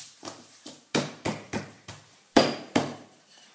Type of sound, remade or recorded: remade